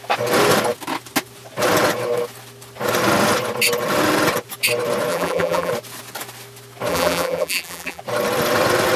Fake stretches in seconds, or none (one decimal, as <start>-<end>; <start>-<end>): 5.1-5.7; 6.9-8.0